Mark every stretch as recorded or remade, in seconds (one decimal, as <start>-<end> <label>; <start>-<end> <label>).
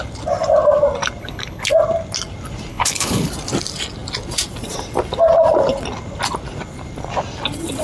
0.0-1.2 recorded; 1.2-1.7 remade; 1.7-2.7 recorded; 2.7-3.3 remade; 3.3-7.8 recorded